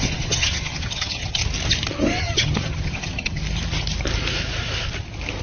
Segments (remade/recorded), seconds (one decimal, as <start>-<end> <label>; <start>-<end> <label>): 0.0-1.4 remade; 1.4-2.2 recorded; 2.2-3.4 remade; 3.4-5.4 recorded